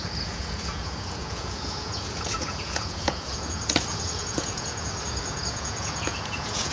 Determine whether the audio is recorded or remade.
remade